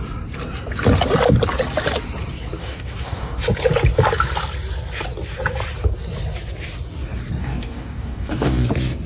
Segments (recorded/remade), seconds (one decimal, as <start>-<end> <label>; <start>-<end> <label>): 0.0-2.6 recorded; 2.6-3.4 remade; 3.4-7.4 recorded; 7.4-8.7 remade; 8.7-9.1 recorded